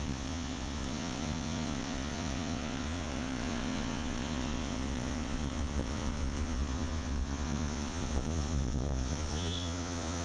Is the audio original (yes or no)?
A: no